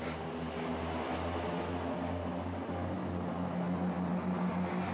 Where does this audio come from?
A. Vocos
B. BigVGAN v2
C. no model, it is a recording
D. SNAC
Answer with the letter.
C